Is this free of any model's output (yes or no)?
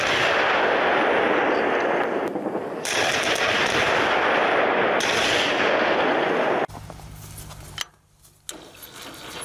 yes